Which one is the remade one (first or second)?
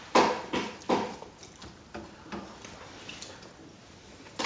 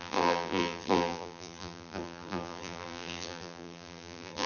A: second